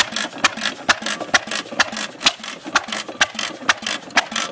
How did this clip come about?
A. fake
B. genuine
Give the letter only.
B